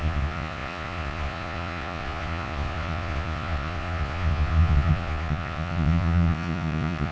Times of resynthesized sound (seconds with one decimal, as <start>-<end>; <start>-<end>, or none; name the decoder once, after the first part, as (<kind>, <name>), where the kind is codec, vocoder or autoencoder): 0.0-7.1 (vocoder, Vocos)

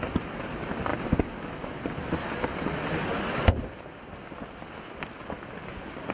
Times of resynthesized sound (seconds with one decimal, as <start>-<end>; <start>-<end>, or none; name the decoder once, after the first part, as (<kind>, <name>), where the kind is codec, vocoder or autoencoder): none

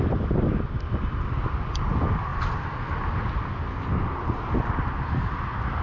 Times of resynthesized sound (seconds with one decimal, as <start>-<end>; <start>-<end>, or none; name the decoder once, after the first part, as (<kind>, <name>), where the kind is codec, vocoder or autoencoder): none

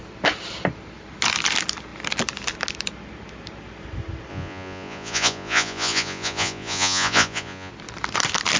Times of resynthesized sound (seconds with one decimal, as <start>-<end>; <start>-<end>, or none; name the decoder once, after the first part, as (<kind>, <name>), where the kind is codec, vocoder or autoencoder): 4.3-7.7 (vocoder, Vocos)

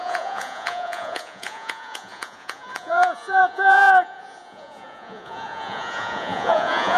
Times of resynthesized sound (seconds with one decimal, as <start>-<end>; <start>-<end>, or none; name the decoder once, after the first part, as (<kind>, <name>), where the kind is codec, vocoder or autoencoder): 0.0-7.0 (vocoder, Vocos)

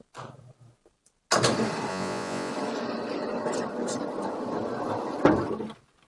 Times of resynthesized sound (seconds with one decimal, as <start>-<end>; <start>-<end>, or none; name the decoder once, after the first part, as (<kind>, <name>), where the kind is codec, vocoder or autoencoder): 1.9-2.5 (vocoder, Vocos)

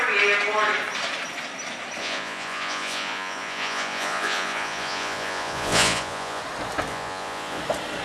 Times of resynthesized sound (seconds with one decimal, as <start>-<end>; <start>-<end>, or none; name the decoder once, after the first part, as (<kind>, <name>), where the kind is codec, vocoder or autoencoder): 2.0-6.4 (vocoder, Vocos); 6.9-7.6

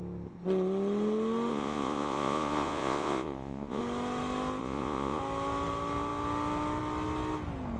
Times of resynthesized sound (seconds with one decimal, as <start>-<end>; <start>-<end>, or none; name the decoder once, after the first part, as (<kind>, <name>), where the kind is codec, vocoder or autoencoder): 1.5-3.8 (vocoder, Vocos); 4.6-5.2